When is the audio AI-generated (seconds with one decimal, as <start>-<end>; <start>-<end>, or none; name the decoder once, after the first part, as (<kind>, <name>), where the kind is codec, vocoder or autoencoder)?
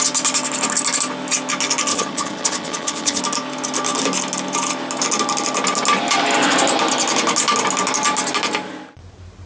1.9-3.2 (vocoder, HiFi-GAN)